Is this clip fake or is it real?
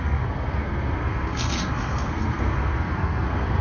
fake